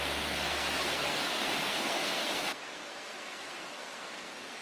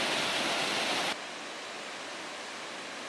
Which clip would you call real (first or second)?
second